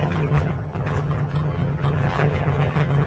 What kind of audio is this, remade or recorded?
remade